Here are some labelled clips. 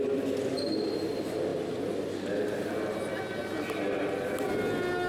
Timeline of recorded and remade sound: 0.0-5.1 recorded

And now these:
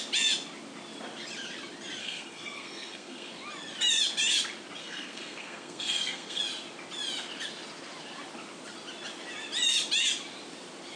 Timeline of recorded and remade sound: 0.0-2.0 recorded; 2.0-3.3 remade; 3.3-4.8 recorded; 4.8-6.4 remade; 6.4-11.0 recorded

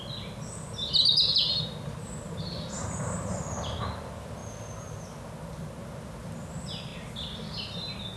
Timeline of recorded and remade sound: 0.0-8.2 recorded

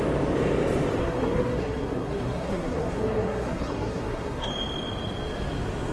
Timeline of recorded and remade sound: 0.0-1.0 recorded; 1.0-4.5 remade; 4.5-5.9 recorded

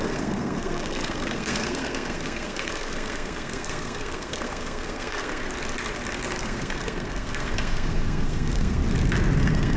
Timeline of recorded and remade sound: 0.0-5.4 remade; 5.4-6.4 recorded; 6.4-8.8 remade; 8.8-9.4 recorded; 9.4-9.8 remade

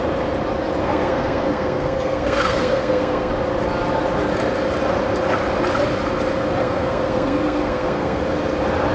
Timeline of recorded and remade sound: 0.0-0.8 recorded; 0.8-3.3 remade; 3.3-6.6 recorded; 6.6-8.2 remade; 8.2-8.9 recorded